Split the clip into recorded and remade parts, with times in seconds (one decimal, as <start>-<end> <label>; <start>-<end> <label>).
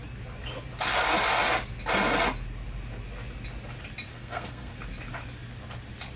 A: 0.0-4.1 recorded; 4.1-4.7 remade; 4.7-6.2 recorded